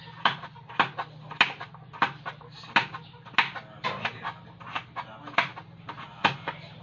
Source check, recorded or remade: recorded